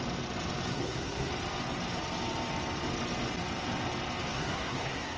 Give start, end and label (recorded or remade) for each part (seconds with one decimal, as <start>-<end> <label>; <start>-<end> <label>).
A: 0.0-0.7 recorded; 0.7-1.3 remade; 1.3-4.3 recorded; 4.3-5.2 remade